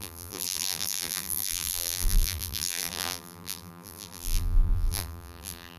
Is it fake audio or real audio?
fake